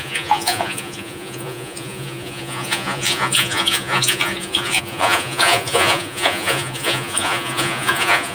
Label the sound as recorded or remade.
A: remade